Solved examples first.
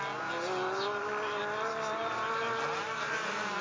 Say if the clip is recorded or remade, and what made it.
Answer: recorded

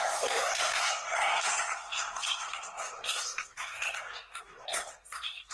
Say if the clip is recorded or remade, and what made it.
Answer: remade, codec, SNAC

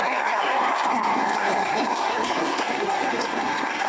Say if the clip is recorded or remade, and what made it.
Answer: remade, codec, SNAC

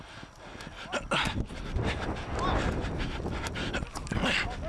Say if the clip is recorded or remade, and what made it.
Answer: recorded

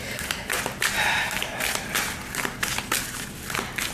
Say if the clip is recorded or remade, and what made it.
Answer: recorded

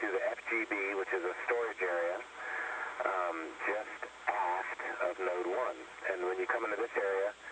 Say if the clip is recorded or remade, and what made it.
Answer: recorded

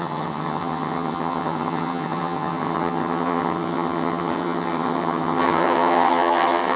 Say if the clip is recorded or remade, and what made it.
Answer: remade, vocoder, HiFi-GAN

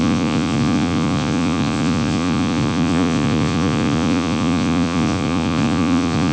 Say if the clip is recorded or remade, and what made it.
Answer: remade, vocoder, Vocos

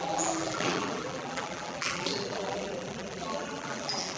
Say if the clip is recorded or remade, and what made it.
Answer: remade, vocoder, BigVGAN v2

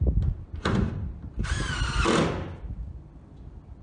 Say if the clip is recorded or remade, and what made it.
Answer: recorded